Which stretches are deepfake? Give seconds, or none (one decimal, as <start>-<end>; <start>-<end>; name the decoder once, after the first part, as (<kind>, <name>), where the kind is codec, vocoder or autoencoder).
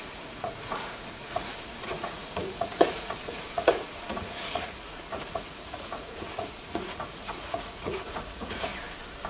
0.0-8.7 (vocoder, Vocos)